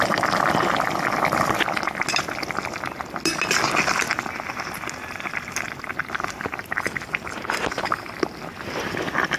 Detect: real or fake real